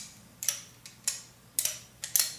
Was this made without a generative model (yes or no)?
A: yes